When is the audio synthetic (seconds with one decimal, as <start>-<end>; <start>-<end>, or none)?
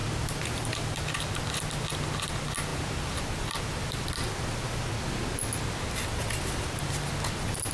none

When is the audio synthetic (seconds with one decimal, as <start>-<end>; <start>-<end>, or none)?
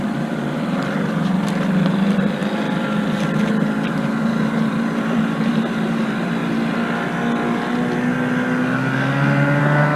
0.0-2.4; 4.2-6.4; 9.6-10.0